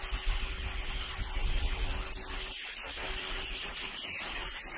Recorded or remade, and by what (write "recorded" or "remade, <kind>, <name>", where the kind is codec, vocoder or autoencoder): recorded